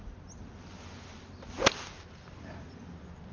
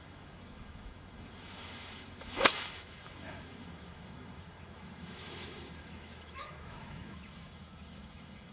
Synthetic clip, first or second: second